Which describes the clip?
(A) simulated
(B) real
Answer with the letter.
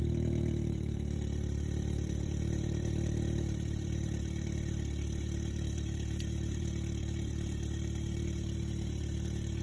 A